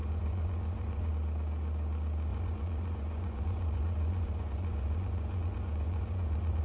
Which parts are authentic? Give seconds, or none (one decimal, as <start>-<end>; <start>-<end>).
1.1-2.3